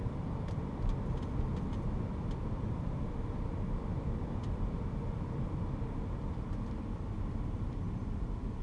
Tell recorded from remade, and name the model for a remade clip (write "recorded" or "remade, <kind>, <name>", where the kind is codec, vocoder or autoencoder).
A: remade, vocoder, BigVGAN v2